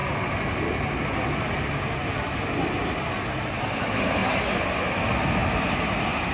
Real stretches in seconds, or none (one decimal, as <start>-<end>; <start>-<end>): 0.0-3.8; 4.2-5.0; 5.4-6.3

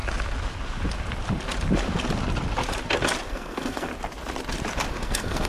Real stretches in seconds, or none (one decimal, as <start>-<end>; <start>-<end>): 0.0-3.3; 3.9-4.9

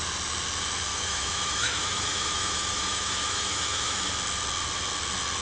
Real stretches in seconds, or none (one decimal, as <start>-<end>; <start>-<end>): 0.0-0.9; 4.1-5.4

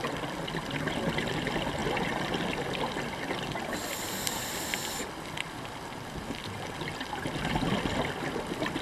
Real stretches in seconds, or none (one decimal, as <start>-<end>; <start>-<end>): 0.0-8.8

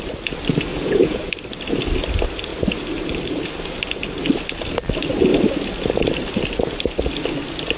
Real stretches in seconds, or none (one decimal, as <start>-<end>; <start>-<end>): 0.0-0.7; 1.2-7.8

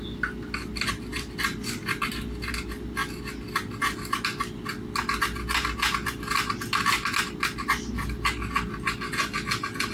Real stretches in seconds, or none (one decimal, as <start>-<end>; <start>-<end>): 0.0-9.9

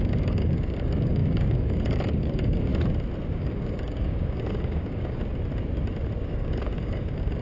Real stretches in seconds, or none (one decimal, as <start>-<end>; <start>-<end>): 2.7-3.3; 5.2-6.2

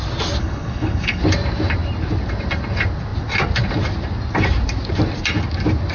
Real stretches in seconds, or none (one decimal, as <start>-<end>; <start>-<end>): 0.0-0.4; 1.2-5.9